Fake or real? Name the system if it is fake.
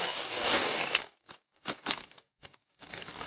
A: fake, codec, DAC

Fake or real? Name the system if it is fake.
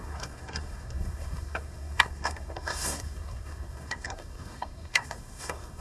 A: fake, codec, SNAC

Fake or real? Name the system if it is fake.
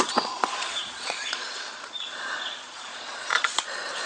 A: fake, vocoder, Vocos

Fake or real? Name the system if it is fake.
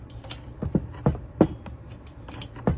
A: real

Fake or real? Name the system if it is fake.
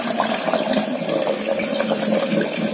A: real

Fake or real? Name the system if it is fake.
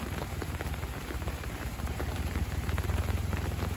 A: fake, vocoder, BigVGAN v2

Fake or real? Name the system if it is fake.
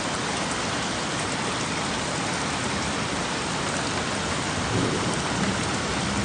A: real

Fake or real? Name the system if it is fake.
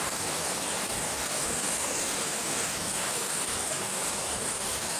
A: fake, codec, DAC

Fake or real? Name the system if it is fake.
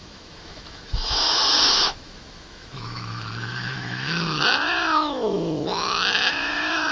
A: fake, autoencoder, DAC-VAE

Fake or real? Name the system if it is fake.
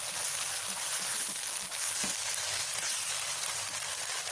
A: real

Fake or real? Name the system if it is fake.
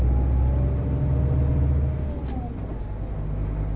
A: real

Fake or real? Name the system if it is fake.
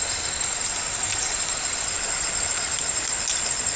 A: real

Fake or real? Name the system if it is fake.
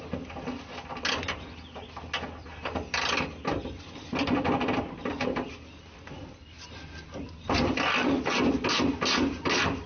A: real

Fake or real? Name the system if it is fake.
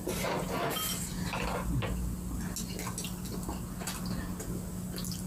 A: real